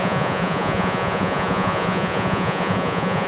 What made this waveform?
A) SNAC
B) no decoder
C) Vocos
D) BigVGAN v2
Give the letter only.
C